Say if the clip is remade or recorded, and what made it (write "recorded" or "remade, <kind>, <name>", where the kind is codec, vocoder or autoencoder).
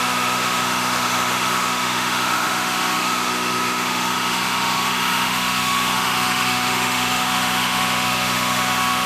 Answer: remade, autoencoder, DAC-VAE